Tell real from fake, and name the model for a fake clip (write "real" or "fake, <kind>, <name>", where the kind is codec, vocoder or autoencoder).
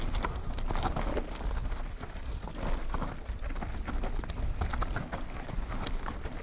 real